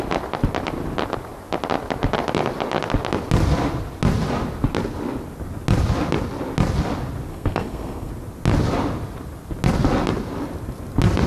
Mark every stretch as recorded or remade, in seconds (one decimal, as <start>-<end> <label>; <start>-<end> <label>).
0.0-7.3 recorded; 7.3-8.1 remade; 8.1-11.3 recorded